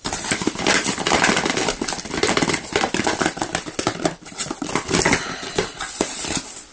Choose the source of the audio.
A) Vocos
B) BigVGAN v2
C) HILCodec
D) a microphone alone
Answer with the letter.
B